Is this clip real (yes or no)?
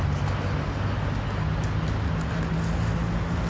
yes